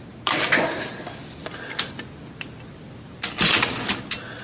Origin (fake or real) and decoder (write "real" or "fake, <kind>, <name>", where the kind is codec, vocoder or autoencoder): real